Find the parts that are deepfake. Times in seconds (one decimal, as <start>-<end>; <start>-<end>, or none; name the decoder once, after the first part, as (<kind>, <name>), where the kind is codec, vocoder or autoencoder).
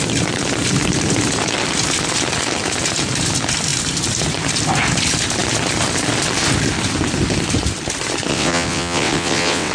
8.3-9.7 (vocoder, WaveNeXt)